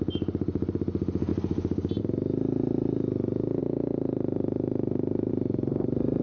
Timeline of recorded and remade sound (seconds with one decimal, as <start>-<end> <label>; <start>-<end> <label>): 0.0-6.2 recorded